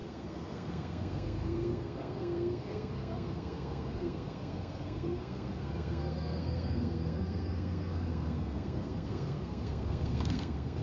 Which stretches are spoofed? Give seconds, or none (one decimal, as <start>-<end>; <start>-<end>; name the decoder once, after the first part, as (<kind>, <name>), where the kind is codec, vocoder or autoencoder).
0.0-10.8 (codec, SNAC)